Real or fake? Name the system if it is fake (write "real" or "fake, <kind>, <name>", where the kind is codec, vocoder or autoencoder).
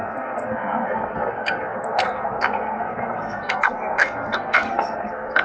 fake, codec, SNAC